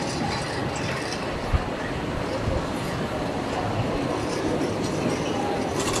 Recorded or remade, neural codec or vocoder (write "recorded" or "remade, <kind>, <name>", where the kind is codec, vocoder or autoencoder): recorded